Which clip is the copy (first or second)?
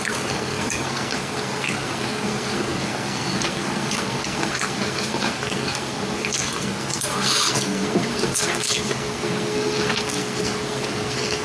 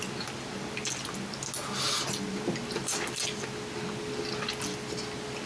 first